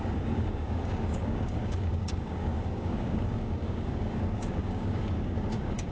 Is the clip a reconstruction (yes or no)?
yes